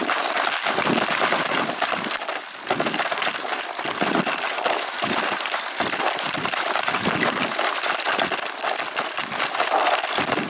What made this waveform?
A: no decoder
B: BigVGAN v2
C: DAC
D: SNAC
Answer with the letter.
B